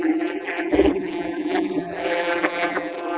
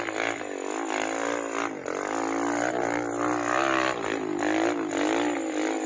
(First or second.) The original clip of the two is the second